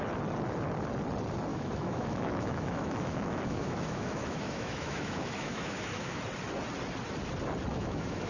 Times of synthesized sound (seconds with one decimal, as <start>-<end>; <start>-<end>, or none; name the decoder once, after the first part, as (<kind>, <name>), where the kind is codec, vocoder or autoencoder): 1.5-6.2 (autoencoder, DAC-VAE); 7.7-8.3